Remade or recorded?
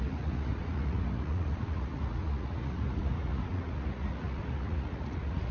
remade